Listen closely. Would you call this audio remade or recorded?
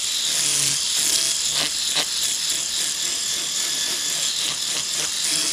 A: recorded